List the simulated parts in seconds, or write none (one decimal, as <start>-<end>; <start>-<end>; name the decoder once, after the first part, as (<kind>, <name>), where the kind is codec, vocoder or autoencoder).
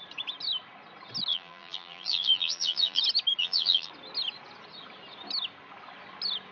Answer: 1.3-3.0 (vocoder, BigVGAN v2); 3.4-3.9